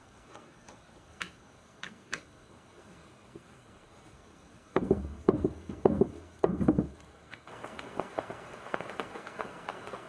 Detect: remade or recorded remade